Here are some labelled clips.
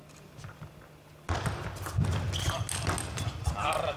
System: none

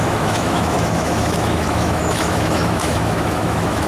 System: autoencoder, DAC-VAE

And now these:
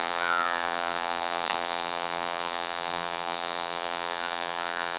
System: vocoder, BigVGAN v2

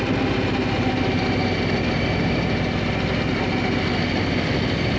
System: none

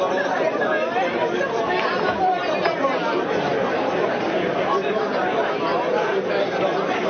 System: none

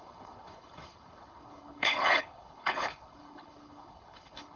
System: codec, HILCodec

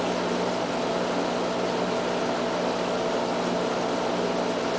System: none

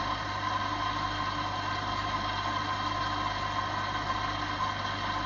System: none